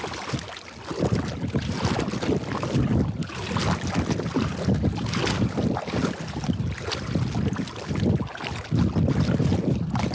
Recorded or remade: recorded